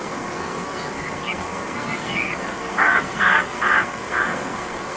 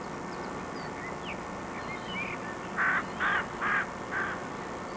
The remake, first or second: first